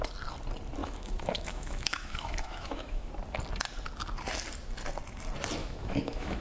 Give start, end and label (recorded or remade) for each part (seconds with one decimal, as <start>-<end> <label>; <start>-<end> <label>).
0.0-0.8 recorded; 0.8-3.1 remade; 3.1-5.6 recorded; 5.6-6.4 remade